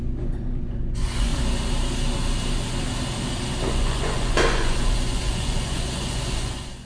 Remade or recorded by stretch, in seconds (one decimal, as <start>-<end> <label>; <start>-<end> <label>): 0.0-1.3 remade; 1.3-3.7 recorded; 3.7-6.9 remade